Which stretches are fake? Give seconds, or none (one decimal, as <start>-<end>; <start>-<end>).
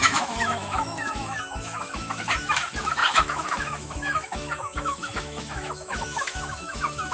0.0-7.1